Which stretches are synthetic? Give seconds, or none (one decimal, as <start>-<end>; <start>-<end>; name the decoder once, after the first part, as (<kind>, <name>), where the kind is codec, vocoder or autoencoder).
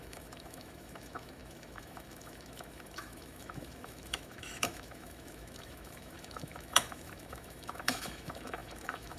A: 0.0-9.2 (autoencoder, DAC-VAE)